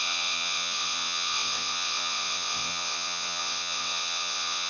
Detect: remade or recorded remade